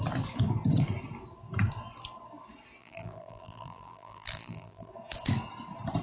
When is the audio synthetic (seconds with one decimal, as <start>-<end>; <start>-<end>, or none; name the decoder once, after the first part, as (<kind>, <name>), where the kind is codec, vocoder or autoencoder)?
2.8-4.9 (vocoder, BigVGAN v2)